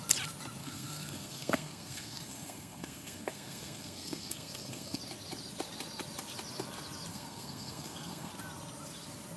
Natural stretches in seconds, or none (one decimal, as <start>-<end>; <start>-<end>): 0.0-0.6; 5.0-7.1; 8.3-9.4